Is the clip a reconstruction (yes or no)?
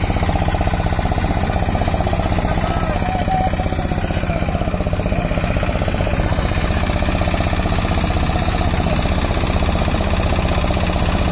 no